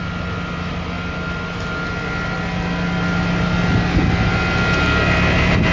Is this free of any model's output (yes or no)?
yes